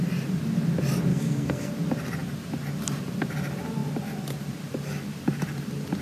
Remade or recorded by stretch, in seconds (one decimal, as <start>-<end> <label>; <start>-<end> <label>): 0.0-1.1 recorded; 1.1-1.7 remade; 1.7-6.0 recorded